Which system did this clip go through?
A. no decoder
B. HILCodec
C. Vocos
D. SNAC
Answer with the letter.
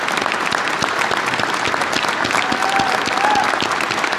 A